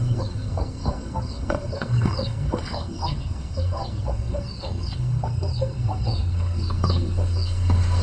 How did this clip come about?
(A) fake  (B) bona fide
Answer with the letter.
A